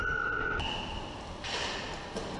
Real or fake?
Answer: real